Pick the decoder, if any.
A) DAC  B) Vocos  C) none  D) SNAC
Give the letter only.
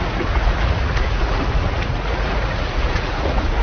B